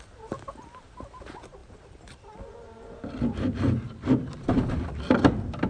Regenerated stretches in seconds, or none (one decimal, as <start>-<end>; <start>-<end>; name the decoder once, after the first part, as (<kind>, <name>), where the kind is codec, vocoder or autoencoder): none